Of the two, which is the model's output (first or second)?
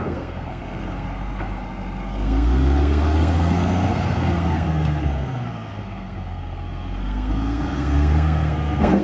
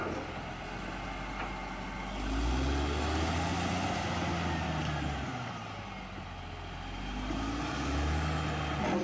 first